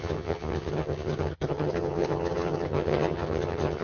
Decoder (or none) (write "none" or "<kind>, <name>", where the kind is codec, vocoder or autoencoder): vocoder, HiFi-GAN